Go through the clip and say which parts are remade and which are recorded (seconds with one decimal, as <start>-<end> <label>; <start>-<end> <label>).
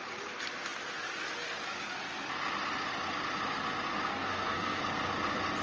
0.0-4.1 recorded; 4.1-4.8 remade; 4.8-5.6 recorded